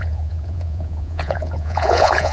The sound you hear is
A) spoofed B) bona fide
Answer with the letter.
A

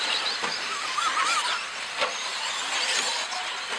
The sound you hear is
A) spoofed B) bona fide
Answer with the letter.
B